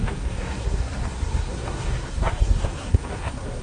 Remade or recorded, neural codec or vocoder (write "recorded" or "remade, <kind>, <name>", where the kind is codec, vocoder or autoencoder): remade, codec, SNAC